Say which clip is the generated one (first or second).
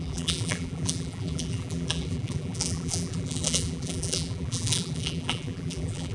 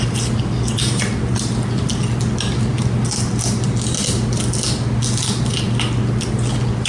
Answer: first